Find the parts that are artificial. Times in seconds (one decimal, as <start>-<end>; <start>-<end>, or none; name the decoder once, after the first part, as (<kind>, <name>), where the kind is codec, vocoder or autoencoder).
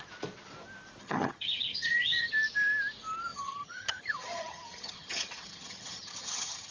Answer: 1.0-2.3 (vocoder, HiFi-GAN); 3.3-6.7